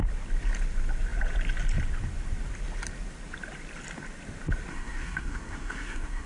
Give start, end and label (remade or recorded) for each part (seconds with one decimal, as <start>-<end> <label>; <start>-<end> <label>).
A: 0.0-4.7 recorded; 4.7-6.3 remade